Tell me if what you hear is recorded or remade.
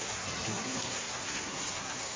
remade